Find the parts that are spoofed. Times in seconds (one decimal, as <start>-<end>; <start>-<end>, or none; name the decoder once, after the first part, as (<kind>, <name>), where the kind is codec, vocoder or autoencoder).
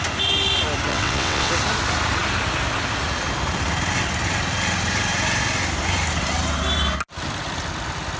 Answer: 0.9-1.5 (vocoder, WaveNeXt)